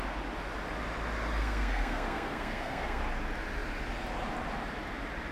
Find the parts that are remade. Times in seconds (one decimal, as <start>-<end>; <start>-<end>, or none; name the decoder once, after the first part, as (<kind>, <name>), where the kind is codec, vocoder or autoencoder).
1.4-3.0 (codec, SNAC)